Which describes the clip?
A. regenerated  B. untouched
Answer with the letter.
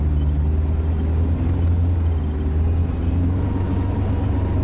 B